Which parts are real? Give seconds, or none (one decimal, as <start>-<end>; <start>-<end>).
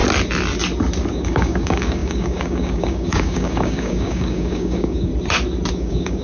0.0-1.1; 5.1-5.7